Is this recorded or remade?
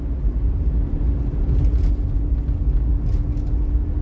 recorded